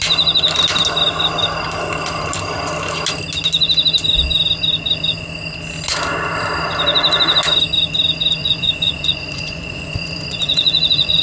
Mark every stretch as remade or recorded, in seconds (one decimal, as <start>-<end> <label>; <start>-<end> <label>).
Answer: 0.0-8.4 recorded; 8.4-11.2 remade